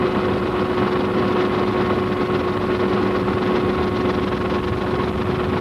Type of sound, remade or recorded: recorded